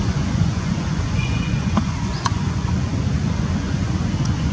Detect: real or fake fake